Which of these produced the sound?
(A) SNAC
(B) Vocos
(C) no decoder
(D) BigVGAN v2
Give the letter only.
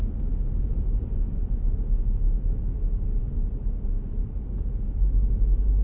C